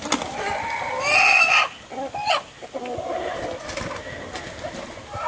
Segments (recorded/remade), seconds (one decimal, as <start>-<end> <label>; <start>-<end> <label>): 0.0-5.3 recorded